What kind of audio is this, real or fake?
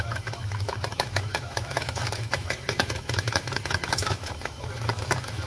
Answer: fake